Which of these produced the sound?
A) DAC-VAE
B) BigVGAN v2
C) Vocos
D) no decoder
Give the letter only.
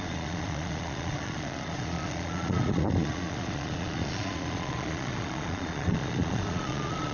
C